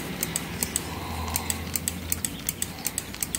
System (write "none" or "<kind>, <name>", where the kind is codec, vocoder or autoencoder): none